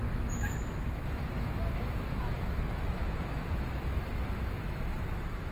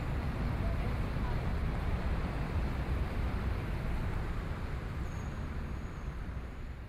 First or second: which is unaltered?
second